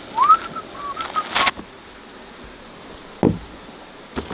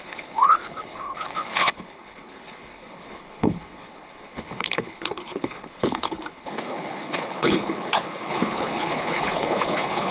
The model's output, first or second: second